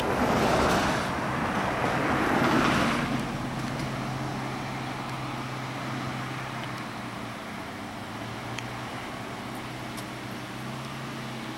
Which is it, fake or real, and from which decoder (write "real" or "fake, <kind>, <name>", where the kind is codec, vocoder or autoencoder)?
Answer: real